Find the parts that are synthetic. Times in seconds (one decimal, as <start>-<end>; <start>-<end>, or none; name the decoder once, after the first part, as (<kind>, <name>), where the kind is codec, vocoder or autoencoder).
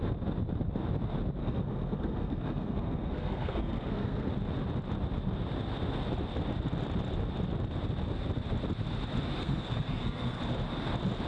1.4-4.3 (codec, SNAC); 9.4-10.4